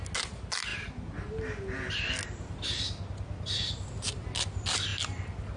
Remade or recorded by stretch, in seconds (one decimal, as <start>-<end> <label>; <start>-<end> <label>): 0.0-5.6 recorded